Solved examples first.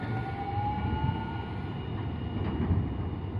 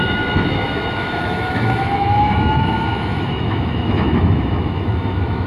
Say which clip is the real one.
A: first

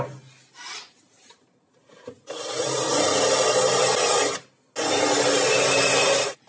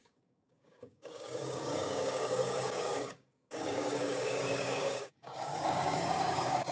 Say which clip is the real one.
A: first